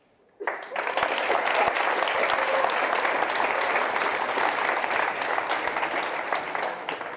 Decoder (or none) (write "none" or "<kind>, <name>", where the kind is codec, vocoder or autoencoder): none